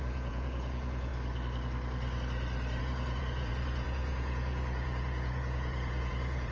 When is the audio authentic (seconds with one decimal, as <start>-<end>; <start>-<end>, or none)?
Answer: 1.1-2.8